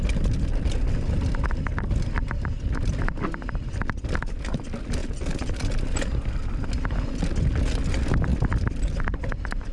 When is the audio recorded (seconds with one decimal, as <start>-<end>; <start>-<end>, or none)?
0.0-5.0; 5.6-9.7